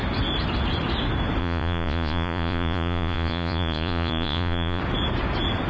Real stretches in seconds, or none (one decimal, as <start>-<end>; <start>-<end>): 0.0-1.4; 4.8-5.7